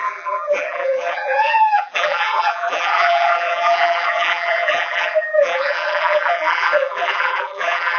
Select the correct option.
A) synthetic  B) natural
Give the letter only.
A